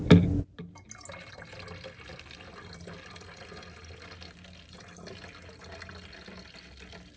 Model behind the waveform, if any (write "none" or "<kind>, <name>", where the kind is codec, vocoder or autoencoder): none